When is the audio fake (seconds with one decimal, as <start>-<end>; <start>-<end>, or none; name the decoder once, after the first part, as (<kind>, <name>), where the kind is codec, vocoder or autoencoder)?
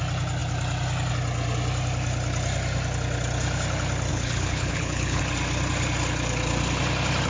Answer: 4.1-5.2 (codec, HILCodec)